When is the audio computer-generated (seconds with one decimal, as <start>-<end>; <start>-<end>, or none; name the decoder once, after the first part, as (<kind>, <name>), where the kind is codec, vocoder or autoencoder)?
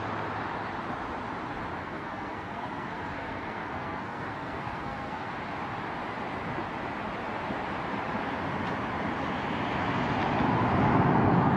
1.8-5.3 (codec, SNAC)